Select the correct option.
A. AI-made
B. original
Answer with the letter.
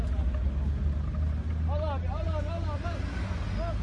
B